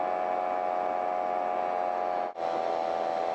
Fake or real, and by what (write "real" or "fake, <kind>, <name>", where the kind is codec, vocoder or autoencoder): real